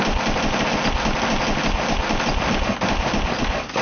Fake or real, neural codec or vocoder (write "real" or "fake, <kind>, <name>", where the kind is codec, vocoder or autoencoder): real